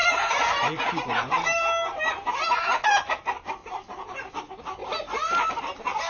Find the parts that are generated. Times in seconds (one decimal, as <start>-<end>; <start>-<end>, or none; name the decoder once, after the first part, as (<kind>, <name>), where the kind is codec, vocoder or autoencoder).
0.0-2.0 (vocoder, BigVGAN v2); 3.6-4.3